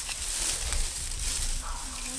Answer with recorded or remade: recorded